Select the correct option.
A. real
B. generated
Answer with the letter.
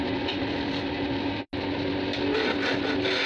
A